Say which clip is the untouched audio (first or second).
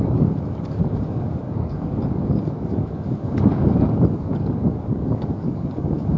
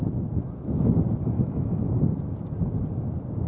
second